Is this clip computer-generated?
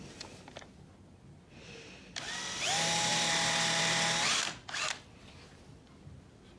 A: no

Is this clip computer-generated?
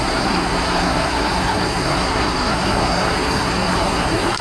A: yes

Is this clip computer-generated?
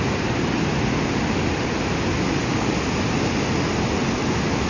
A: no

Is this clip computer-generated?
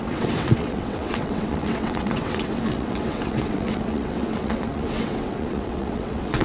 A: yes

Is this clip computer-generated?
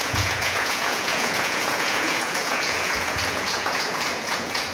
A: yes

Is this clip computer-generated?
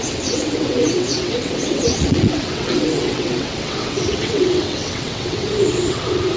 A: yes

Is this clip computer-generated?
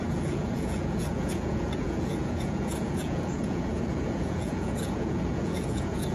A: yes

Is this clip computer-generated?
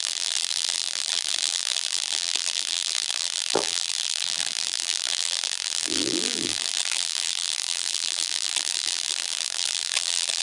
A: yes